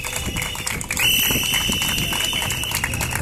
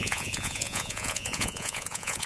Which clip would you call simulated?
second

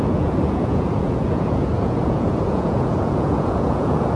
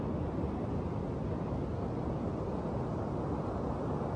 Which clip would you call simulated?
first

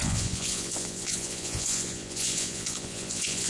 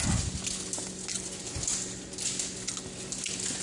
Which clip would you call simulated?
first